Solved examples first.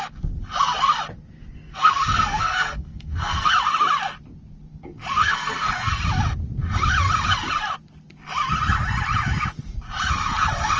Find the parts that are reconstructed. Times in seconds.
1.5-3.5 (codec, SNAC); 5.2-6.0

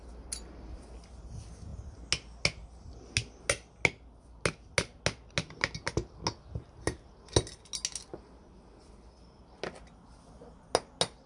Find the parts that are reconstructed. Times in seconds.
none

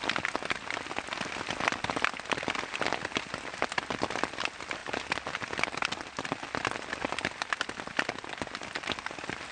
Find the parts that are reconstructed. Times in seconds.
none

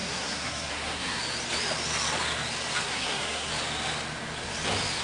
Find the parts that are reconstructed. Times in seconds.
0.0-1.2 (codec, SNAC); 2.8-3.5

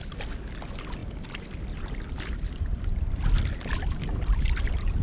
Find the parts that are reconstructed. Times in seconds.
none

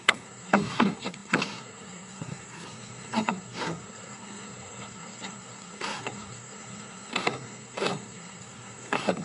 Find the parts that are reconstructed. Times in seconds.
0.0-9.2 (codec, SNAC)

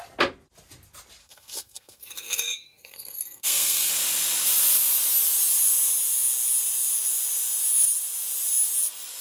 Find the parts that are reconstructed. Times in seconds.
1.2-3.9 (codec, SNAC)